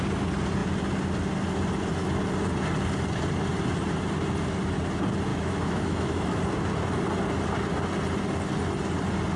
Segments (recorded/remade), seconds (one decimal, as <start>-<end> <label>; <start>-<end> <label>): 0.0-5.3 recorded; 5.3-6.4 remade; 6.4-9.4 recorded

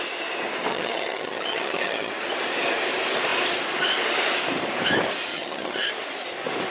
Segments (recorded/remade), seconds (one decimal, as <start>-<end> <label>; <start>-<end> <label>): 0.0-0.7 recorded; 0.7-2.1 remade; 2.1-5.3 recorded; 5.3-5.9 remade; 5.9-6.7 recorded

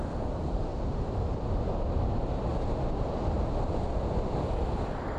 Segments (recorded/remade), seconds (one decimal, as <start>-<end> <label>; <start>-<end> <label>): 0.0-0.7 remade; 0.7-1.3 recorded; 1.3-2.5 remade; 2.5-3.9 recorded; 3.9-5.2 remade

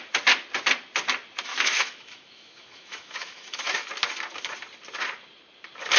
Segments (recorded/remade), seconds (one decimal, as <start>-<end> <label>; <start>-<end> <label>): 0.0-1.5 recorded; 1.5-3.9 remade; 3.9-6.0 recorded

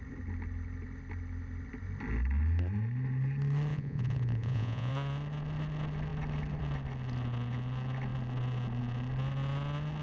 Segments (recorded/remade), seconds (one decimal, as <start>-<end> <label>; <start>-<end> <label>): 0.0-3.7 recorded; 3.7-4.9 remade; 4.9-10.0 recorded

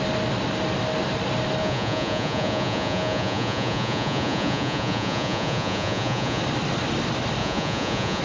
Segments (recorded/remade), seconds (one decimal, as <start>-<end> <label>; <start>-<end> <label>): 0.0-1.6 recorded; 1.6-6.4 remade; 6.4-7.4 recorded; 7.4-8.2 remade